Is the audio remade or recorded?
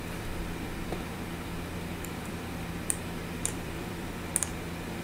remade